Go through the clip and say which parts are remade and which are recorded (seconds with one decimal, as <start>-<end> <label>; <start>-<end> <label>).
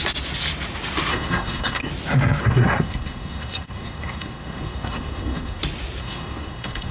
0.0-1.1 recorded; 1.1-1.9 remade; 1.9-2.4 recorded; 2.4-5.6 remade; 5.6-6.0 recorded; 6.0-6.9 remade